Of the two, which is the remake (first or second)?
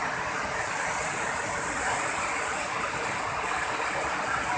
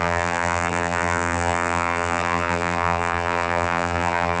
second